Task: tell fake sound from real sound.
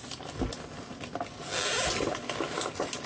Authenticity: real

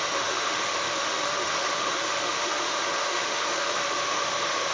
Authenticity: fake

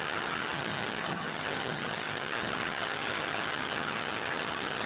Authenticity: fake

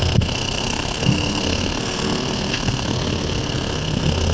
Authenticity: fake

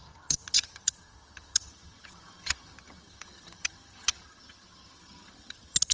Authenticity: fake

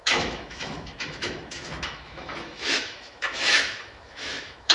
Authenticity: fake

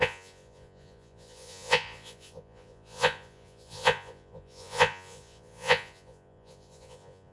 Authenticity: fake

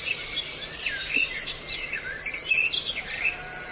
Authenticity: real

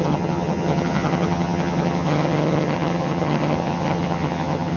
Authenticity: fake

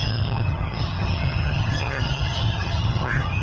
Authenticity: fake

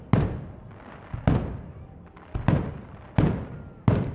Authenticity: real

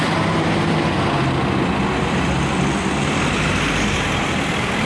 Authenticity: real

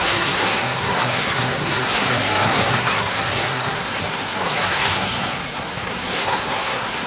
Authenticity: fake